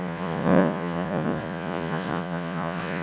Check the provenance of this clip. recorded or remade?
remade